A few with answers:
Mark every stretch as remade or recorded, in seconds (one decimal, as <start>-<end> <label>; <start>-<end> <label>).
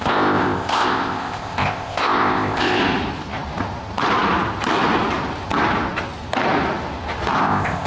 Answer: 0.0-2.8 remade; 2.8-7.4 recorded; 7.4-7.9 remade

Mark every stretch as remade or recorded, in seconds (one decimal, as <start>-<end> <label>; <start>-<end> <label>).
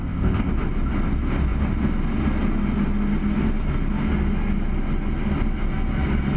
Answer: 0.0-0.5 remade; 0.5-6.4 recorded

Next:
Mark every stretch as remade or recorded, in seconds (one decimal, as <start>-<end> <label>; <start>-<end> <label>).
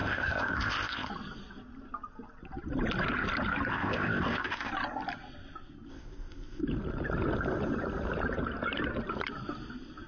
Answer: 0.0-1.1 remade; 1.1-3.7 recorded; 3.7-4.7 remade; 4.7-5.9 recorded; 5.9-6.6 remade; 6.6-10.1 recorded